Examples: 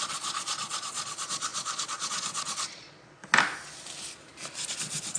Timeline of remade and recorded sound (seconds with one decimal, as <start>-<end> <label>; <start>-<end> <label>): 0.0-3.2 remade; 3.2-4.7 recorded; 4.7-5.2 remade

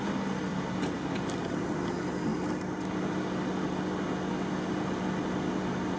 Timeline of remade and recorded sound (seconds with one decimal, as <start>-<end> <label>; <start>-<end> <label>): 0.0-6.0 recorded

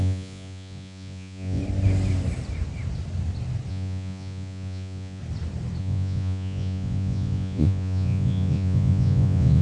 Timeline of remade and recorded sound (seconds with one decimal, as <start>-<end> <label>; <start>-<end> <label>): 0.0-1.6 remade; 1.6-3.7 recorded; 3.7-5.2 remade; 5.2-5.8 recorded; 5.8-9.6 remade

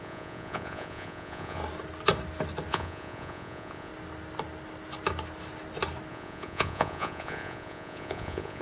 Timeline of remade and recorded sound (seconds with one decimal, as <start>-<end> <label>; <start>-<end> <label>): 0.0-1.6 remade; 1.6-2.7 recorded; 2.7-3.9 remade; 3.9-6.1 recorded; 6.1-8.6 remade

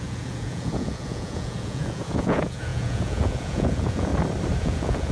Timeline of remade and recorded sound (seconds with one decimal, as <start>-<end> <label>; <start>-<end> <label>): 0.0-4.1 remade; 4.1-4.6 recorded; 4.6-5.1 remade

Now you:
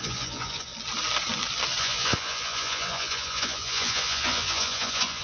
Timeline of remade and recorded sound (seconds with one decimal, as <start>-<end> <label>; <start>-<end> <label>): 0.0-0.7 remade; 0.7-1.8 recorded; 1.8-5.2 remade